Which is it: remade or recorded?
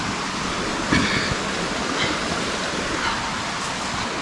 recorded